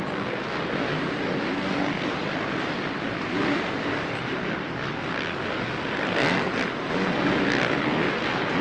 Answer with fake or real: real